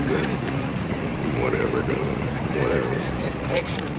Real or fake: fake